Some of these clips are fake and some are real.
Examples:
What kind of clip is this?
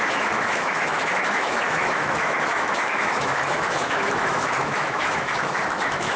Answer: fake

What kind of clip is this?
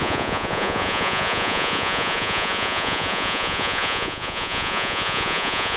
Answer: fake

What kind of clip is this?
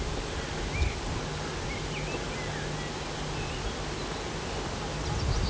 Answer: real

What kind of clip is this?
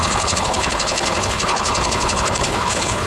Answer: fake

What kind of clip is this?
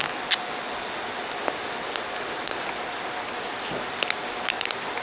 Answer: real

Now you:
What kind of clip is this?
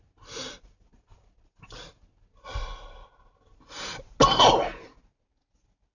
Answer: real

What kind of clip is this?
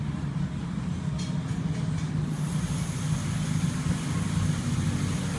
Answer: real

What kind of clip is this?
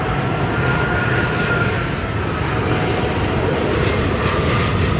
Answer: real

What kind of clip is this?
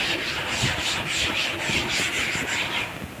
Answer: real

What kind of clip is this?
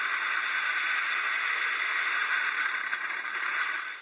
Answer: fake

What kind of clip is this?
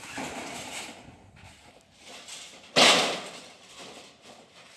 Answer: real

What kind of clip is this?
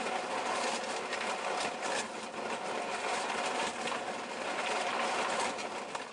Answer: real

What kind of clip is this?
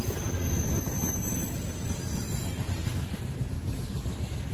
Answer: real